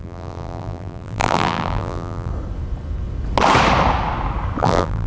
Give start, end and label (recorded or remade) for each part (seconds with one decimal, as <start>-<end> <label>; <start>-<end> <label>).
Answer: 0.0-2.3 remade; 2.3-4.6 recorded; 4.6-5.1 remade